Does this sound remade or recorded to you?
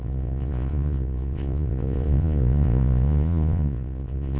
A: remade